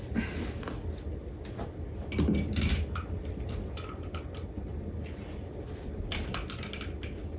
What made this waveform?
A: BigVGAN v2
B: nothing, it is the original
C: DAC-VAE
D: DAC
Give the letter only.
B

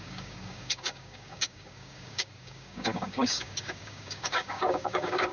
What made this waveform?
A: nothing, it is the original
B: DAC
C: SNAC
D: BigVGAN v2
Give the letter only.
B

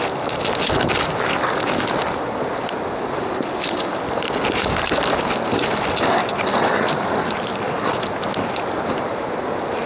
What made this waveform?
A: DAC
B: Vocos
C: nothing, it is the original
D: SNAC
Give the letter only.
C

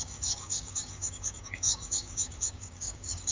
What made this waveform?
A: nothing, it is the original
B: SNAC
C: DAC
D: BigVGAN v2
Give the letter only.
C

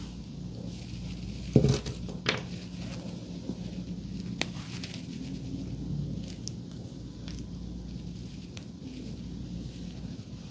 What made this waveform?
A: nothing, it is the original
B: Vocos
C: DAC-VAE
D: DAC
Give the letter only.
A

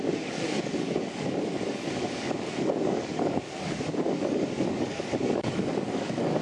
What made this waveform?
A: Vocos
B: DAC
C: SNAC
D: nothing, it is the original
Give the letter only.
B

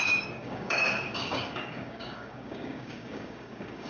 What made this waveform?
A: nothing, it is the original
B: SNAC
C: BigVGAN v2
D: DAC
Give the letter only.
D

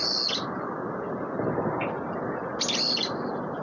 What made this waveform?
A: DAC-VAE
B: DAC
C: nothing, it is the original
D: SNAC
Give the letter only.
C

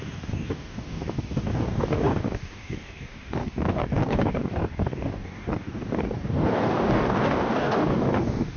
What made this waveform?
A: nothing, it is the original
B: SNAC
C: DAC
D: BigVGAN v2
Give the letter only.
C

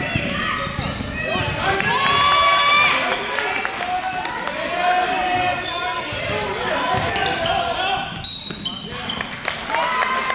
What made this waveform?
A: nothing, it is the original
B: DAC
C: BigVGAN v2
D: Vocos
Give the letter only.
A